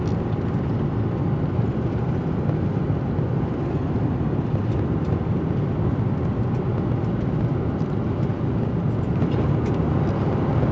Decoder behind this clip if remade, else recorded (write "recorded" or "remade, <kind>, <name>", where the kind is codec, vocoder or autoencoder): recorded